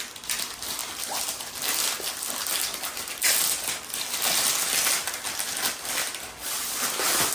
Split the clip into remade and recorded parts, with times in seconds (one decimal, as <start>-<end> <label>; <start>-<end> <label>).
0.0-7.3 recorded